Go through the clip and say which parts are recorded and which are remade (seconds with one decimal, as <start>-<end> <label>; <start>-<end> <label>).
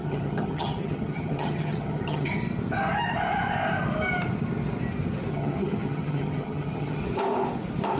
0.0-2.4 remade; 2.4-5.3 recorded; 5.3-7.0 remade; 7.0-8.0 recorded